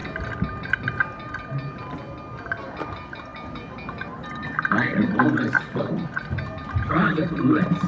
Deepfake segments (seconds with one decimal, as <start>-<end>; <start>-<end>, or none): none